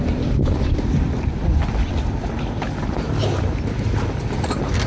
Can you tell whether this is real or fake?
real